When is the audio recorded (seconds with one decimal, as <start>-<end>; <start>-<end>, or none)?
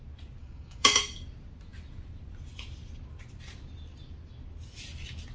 0.0-0.4; 1.0-5.3